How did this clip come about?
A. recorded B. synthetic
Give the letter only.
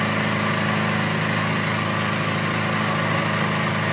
A